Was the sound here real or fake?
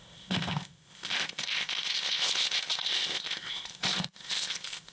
fake